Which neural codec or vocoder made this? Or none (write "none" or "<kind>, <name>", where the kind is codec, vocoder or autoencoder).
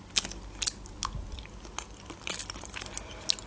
none